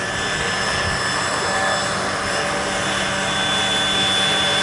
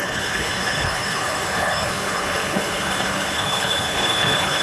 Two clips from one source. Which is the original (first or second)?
first